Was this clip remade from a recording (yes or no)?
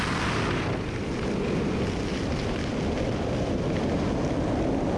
no